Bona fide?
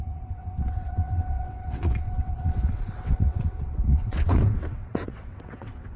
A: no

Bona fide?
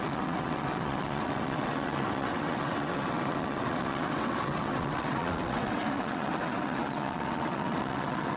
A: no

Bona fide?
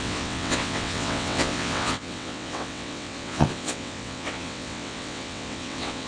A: no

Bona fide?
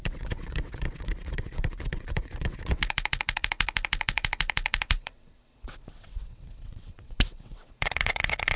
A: no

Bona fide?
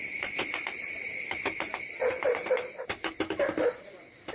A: yes